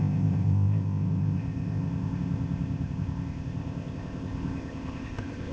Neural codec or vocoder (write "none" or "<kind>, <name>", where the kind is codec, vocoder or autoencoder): codec, ZipCodec